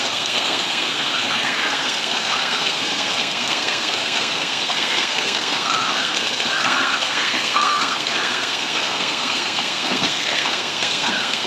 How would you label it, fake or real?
fake